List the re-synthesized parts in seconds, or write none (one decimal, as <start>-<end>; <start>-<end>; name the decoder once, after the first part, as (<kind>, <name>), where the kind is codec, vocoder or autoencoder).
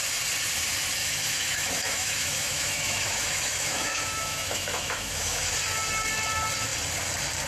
1.0-5.5 (autoencoder, DAC-VAE)